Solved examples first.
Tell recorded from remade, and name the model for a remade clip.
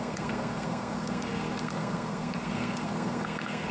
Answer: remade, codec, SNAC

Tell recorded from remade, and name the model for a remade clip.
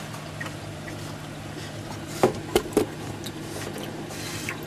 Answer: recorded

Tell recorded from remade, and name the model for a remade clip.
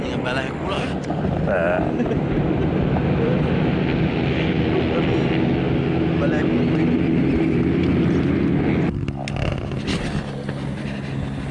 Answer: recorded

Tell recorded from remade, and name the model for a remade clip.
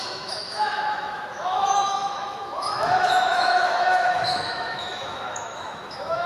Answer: remade, autoencoder, DAC-VAE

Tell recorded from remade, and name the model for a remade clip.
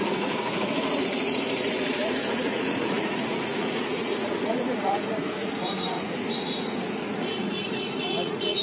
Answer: remade, vocoder, Vocos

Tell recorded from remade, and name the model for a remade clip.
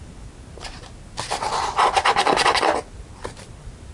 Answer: recorded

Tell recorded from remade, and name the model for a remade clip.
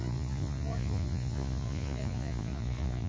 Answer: remade, vocoder, Vocos